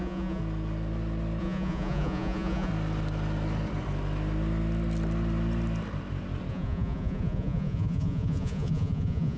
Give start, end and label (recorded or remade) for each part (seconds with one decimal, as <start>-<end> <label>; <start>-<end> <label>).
0.0-0.4 remade; 0.4-1.4 recorded; 1.4-2.7 remade; 2.7-6.5 recorded; 6.5-9.4 remade